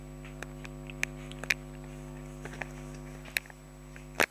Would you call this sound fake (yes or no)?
no